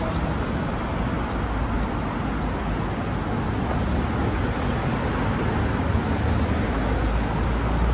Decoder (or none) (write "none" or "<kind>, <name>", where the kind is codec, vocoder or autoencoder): none